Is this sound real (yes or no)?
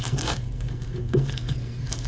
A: no